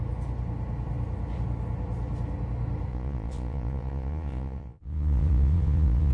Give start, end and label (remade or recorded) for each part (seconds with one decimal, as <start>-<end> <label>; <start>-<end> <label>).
0.0-2.9 recorded; 2.9-6.1 remade